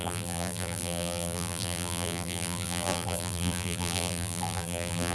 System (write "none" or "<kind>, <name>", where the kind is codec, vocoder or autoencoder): vocoder, BigVGAN v2